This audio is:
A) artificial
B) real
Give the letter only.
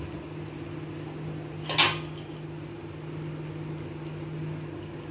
B